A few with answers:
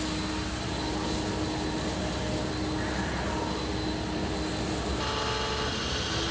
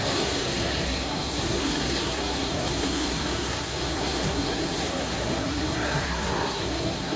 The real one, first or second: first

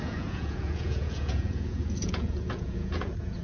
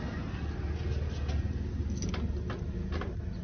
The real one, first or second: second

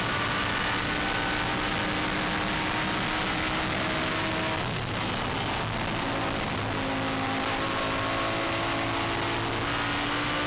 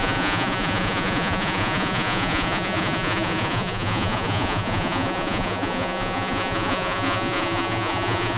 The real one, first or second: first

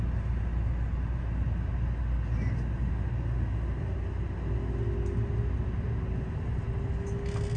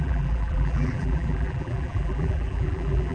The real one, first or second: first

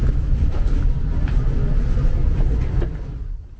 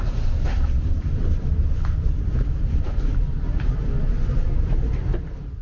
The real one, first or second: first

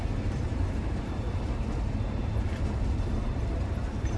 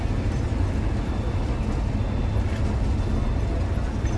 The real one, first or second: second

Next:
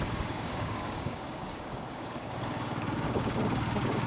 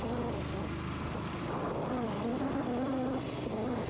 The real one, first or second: second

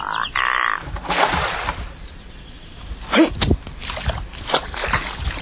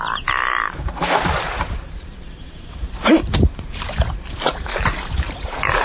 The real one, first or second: first